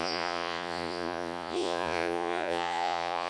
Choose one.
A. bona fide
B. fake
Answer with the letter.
B